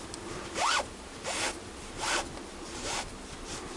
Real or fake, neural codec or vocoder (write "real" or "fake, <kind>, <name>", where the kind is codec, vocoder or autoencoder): real